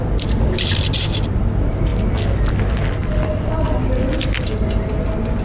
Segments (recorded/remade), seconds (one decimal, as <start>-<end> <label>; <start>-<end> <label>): 0.0-5.4 recorded